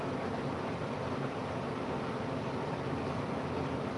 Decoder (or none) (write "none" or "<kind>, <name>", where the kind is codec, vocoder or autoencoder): none